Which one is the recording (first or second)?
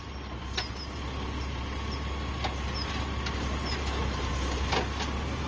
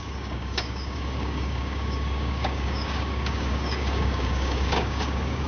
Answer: first